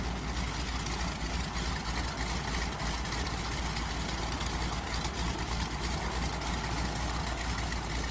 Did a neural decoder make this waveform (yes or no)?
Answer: no